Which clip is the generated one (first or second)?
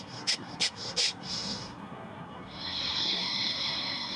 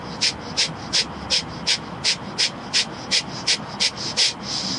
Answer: first